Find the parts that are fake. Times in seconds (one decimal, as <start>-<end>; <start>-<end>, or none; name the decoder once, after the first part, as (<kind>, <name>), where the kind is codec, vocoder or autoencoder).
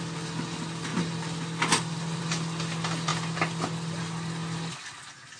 none